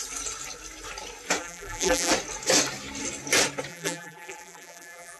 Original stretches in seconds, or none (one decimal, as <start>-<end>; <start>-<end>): 0.0-1.4; 2.1-3.7